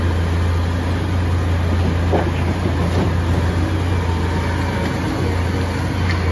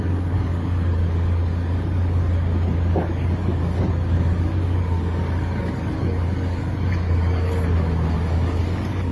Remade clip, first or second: second